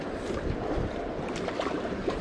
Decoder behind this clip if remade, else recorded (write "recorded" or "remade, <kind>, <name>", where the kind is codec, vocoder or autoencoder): remade, vocoder, BigVGAN v2